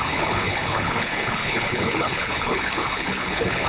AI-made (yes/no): yes